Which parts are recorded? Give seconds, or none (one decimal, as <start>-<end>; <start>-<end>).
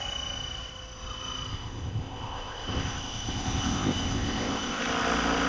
0.0-1.5; 4.8-5.5